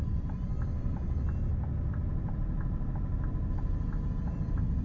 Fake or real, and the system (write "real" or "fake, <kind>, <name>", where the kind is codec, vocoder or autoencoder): real